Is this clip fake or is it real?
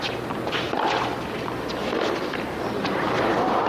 real